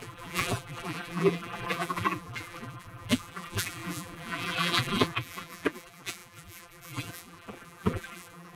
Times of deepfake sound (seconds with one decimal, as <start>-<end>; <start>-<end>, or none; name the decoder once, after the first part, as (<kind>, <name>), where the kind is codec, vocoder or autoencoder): 0.0-8.6 (vocoder, BigVGAN v2)